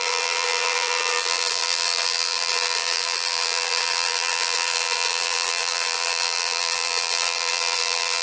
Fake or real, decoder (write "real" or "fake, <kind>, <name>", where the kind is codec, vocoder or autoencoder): fake, vocoder, BigVGAN v2